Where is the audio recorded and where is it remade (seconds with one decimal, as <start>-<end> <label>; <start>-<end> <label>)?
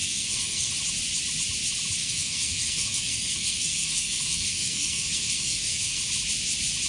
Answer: 0.0-0.7 remade; 0.7-2.0 recorded; 2.0-6.0 remade; 6.0-6.9 recorded